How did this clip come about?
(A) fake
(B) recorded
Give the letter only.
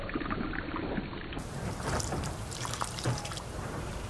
A